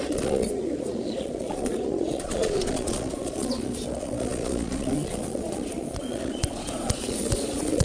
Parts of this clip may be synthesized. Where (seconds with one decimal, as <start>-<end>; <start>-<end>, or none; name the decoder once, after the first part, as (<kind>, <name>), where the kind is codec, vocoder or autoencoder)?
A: 0.0-7.8 (vocoder, Vocos)